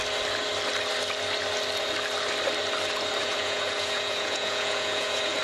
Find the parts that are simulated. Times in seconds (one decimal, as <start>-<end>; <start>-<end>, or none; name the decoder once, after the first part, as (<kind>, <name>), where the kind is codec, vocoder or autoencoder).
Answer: 3.2-5.4 (vocoder, Vocos)